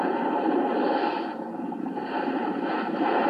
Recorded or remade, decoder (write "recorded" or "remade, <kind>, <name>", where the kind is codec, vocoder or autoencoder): remade, vocoder, BigVGAN v2